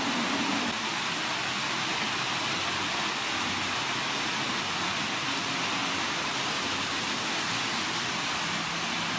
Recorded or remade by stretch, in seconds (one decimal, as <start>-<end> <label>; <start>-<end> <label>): 0.0-9.2 recorded

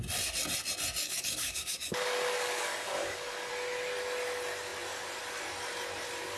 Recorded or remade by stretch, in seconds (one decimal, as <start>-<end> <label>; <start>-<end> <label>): 0.0-1.0 recorded; 1.0-3.5 remade; 3.5-6.4 recorded

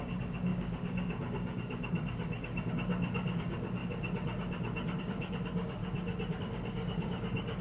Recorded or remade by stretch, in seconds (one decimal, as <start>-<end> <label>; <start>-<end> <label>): 0.0-3.8 remade; 3.8-5.0 recorded; 5.0-5.8 remade; 5.8-6.4 recorded; 6.4-7.6 remade